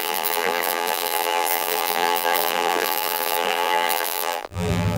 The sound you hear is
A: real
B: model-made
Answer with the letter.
B